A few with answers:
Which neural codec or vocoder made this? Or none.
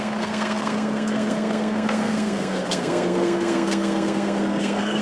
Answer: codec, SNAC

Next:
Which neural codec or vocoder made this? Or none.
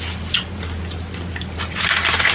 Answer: none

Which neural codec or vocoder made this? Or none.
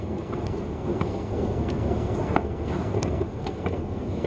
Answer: codec, SNAC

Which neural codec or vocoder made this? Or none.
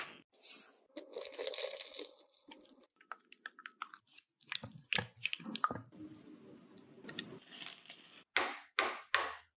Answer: none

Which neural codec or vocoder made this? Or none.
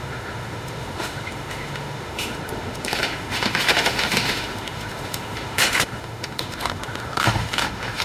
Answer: autoencoder, DAC-VAE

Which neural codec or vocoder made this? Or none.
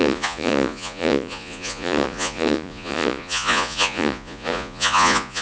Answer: vocoder, Vocos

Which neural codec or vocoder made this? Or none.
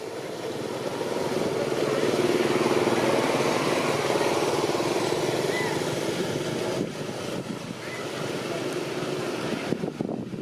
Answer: none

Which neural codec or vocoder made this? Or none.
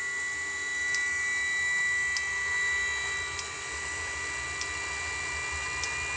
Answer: none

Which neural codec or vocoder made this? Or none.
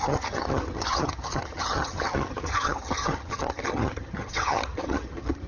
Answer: vocoder, HiFi-GAN